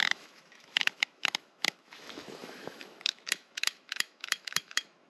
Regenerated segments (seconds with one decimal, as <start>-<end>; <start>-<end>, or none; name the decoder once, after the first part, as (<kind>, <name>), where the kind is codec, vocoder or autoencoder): 0.0-5.1 (autoencoder, DAC-VAE)